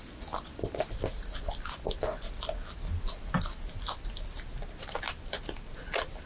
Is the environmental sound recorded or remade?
recorded